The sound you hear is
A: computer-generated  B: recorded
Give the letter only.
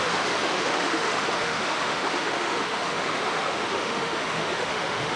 A